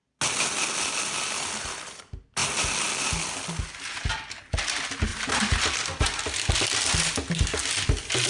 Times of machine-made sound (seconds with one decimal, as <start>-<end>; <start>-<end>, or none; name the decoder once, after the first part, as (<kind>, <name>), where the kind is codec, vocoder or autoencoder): 5.1-6.9 (vocoder, BigVGAN v2)